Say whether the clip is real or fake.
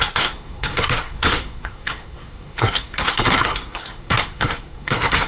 fake